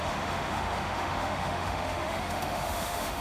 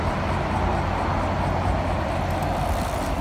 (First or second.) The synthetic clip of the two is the first